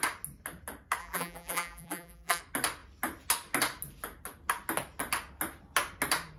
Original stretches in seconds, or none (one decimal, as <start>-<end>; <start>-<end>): 0.0-1.0; 2.4-6.4